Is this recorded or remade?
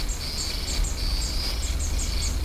recorded